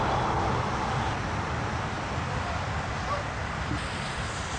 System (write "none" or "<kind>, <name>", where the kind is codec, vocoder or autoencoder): none